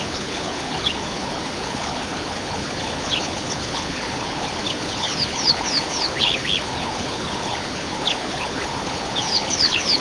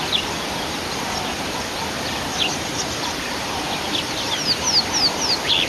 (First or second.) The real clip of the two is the second